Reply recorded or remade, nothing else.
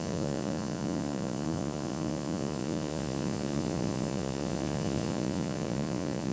remade